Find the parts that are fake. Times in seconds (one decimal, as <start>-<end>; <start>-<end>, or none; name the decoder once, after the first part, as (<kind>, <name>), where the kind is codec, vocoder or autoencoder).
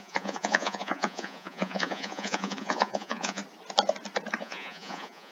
0.0-3.4 (vocoder, Vocos); 4.4-5.3